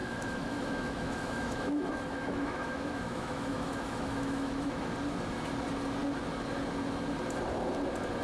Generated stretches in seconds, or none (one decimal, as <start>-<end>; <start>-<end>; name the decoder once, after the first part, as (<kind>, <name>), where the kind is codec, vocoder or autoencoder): 0.0-4.9 (autoencoder, DAC-VAE)